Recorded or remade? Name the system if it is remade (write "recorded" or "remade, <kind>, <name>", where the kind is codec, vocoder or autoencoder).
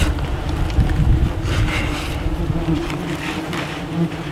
remade, vocoder, BigVGAN v2